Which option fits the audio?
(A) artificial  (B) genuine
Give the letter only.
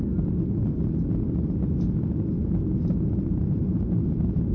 B